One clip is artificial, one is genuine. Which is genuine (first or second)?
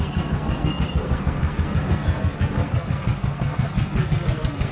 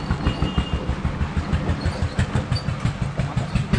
second